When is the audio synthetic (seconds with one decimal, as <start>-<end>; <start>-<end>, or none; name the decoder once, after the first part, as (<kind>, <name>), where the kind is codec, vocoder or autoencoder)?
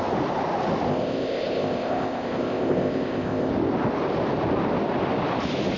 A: 0.9-3.5 (codec, ZipCodec)